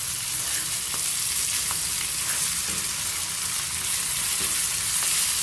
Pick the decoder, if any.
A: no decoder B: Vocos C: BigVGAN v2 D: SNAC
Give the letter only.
A